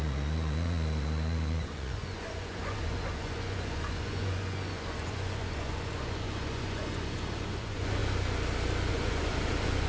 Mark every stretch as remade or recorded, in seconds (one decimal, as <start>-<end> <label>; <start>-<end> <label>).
0.0-8.0 remade; 8.0-8.9 recorded; 8.9-9.9 remade